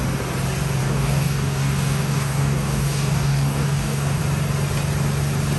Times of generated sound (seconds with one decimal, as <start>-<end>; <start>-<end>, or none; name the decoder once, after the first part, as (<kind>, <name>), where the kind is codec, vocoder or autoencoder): 0.8-4.2 (codec, DAC)